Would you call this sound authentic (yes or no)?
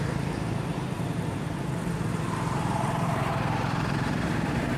no